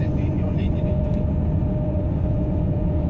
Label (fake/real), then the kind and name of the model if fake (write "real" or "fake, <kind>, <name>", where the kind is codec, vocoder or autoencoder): fake, vocoder, Vocos